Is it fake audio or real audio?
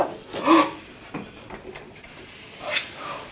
real